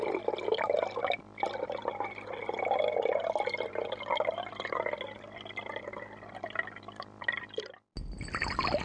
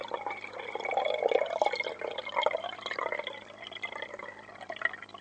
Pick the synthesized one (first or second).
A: second